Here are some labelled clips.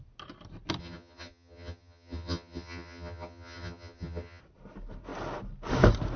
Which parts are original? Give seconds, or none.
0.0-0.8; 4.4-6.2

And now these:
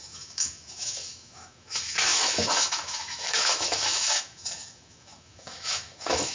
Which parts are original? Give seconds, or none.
none

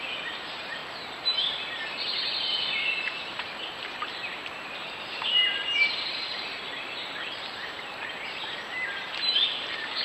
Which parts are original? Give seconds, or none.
8.0-8.9

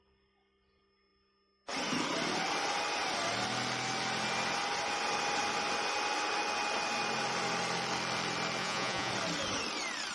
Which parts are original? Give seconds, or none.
0.0-8.6; 9.1-10.1

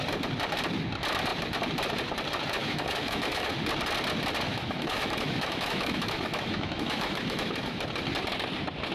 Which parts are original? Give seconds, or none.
0.0-2.6; 3.5-4.5; 7.8-8.9